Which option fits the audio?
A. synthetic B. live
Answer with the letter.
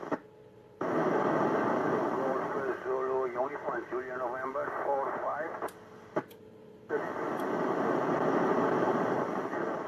A